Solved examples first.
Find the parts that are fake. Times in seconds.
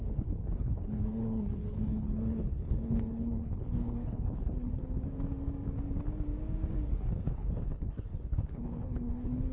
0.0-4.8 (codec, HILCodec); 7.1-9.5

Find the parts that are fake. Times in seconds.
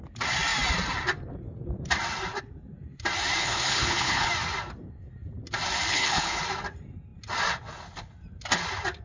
3.4-4.3 (codec, HILCodec); 5.9-6.4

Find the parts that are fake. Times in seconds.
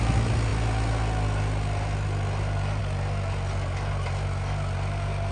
none